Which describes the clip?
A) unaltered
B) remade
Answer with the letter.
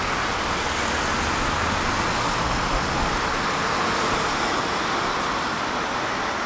A